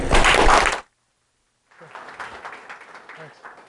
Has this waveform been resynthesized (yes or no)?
no